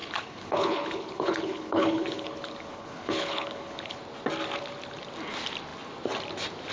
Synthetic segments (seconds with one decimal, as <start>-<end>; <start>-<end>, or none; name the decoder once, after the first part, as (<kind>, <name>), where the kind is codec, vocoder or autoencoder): 0.0-4.0 (codec, HILCodec)